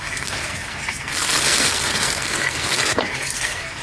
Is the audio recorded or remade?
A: remade